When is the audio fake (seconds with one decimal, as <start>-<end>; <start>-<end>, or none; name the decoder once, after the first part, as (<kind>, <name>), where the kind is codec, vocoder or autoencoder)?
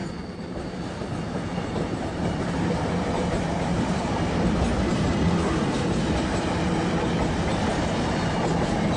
0.0-4.1 (vocoder, BigVGAN v2)